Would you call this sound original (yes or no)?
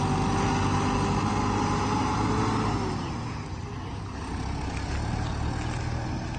yes